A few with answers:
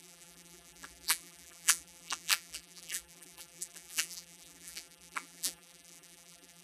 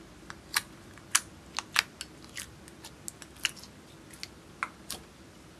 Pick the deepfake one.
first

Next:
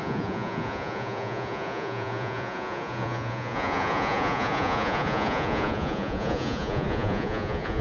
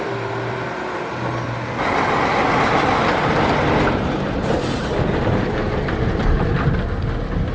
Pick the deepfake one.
first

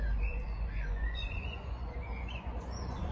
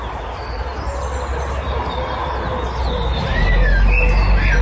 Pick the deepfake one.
first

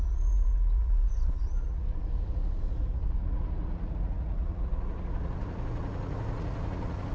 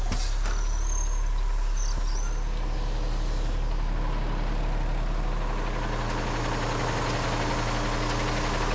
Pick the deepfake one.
first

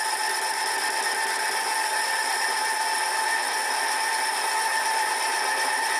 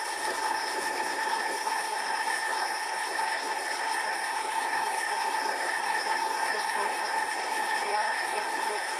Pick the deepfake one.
second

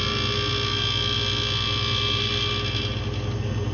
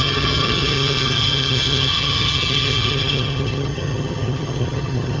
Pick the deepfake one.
second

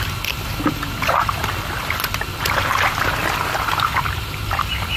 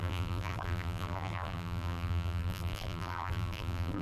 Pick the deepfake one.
second